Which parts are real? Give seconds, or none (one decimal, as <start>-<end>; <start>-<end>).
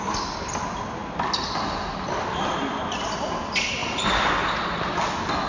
0.0-5.5